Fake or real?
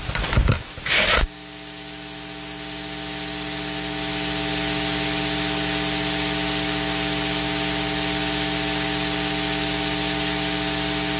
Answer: real